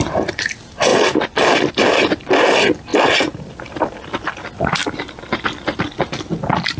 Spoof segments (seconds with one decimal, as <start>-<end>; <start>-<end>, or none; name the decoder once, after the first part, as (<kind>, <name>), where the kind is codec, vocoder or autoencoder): 0.9-1.7 (vocoder, BigVGAN v2); 2.9-3.5